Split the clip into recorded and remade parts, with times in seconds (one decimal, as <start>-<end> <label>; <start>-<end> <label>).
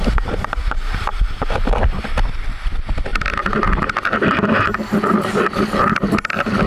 0.0-6.7 recorded